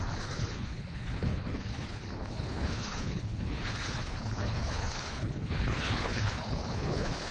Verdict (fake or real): fake